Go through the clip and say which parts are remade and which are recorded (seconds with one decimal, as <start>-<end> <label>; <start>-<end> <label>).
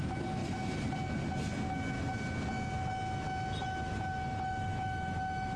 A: 0.0-0.4 remade; 0.4-3.6 recorded; 3.6-5.6 remade